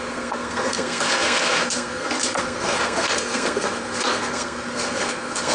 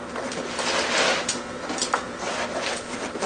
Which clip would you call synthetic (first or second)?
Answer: first